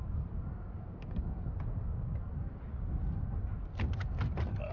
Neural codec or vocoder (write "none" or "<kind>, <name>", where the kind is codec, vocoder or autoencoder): none